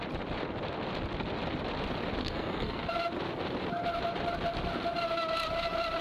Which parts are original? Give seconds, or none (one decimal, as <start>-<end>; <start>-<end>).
0.0-2.2; 2.9-6.0